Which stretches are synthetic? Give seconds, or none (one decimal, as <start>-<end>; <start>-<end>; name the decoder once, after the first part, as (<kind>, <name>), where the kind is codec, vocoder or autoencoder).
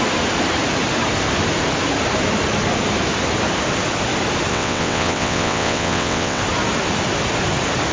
4.5-6.4 (vocoder, WaveNeXt)